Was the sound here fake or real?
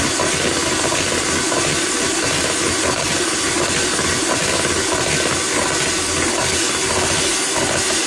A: real